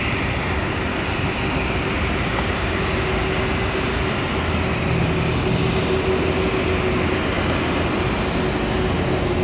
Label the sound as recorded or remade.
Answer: recorded